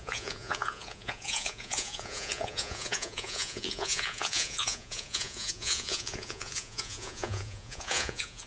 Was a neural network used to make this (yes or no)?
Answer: yes